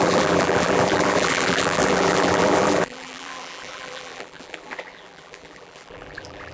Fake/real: fake